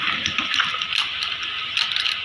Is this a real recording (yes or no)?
yes